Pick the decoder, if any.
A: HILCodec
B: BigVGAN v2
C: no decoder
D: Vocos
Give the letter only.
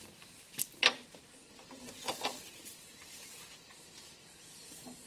C